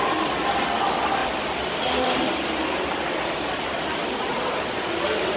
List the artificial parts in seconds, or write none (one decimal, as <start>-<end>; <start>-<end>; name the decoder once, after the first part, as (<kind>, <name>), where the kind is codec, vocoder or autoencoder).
none